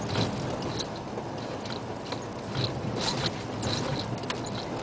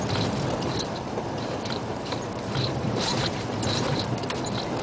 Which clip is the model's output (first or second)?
second